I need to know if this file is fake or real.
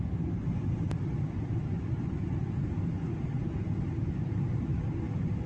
real